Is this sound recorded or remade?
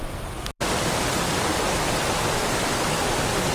recorded